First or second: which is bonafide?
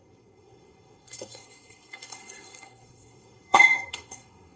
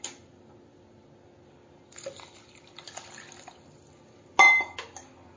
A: second